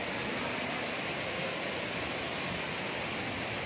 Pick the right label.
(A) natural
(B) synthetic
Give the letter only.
A